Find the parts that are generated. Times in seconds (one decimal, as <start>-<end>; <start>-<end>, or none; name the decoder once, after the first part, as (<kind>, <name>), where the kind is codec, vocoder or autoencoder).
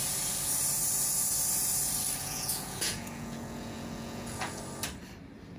2.2-4.6 (vocoder, Vocos)